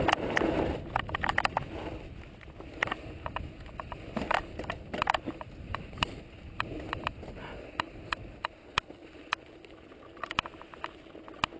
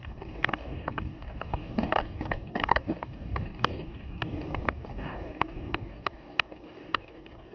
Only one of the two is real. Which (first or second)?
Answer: first